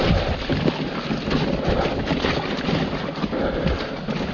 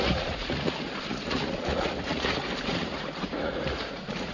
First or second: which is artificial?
second